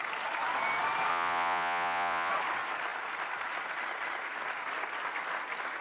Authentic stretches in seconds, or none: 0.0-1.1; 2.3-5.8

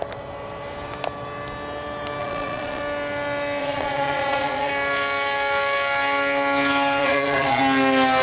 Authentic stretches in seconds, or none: 0.0-2.2; 2.8-3.6; 4.7-7.0; 7.6-8.2

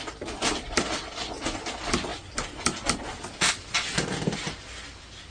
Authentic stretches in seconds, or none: 0.0-5.3

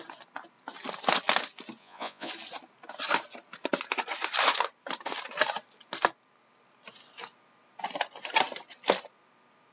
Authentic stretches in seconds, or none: 0.0-1.8; 2.3-9.7

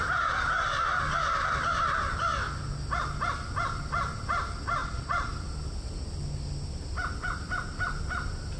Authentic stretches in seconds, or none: 0.0-4.8; 5.3-8.6

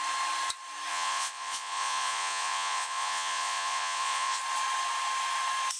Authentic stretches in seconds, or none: 0.0-0.9; 4.4-5.8